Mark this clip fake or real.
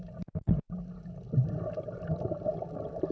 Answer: real